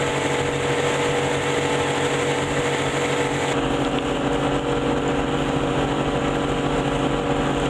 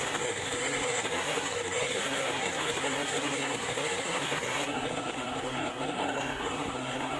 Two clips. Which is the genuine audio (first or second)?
first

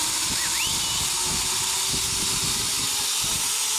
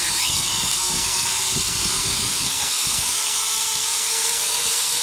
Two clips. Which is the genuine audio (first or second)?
first